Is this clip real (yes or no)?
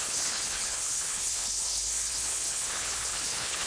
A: no